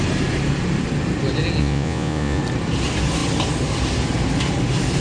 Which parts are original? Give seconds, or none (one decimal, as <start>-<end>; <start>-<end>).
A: 0.0-1.6; 2.4-5.0